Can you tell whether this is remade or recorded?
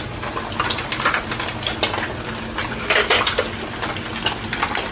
recorded